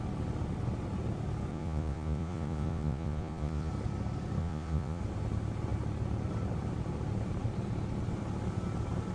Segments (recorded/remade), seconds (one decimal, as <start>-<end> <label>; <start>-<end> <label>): 0.0-1.5 recorded; 1.5-3.7 remade; 3.7-4.4 recorded; 4.4-5.0 remade; 5.0-9.1 recorded